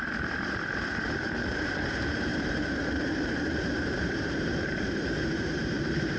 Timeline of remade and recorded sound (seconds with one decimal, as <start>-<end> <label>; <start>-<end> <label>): 0.0-6.2 remade